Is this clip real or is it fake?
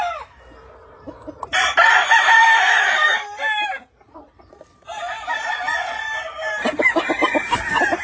fake